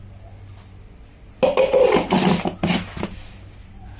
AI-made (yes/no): no